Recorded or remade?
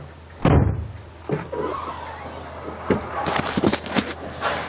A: recorded